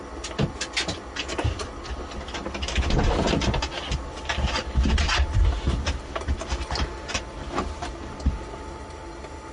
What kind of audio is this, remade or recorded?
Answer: recorded